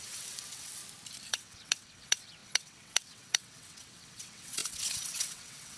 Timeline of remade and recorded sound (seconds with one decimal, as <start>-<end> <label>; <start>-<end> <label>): 0.0-0.8 remade; 0.8-1.3 recorded; 1.3-5.8 remade